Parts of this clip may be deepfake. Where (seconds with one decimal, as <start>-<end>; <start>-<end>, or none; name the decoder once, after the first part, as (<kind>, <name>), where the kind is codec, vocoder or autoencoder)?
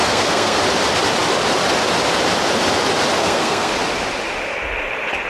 0.0-0.6 (codec, SNAC); 3.2-3.7